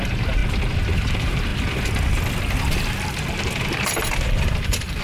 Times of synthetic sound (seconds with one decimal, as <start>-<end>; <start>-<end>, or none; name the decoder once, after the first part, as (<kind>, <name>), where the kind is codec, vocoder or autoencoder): 0.0-0.4 (vocoder, BigVGAN v2); 0.9-1.5; 4.5-5.0